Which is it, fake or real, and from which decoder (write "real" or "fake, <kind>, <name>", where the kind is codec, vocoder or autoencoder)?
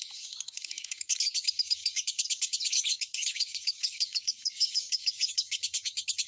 fake, codec, DAC